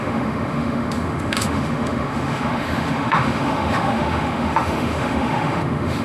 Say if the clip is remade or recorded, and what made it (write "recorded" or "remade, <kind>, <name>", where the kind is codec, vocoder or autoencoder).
remade, autoencoder, DAC-VAE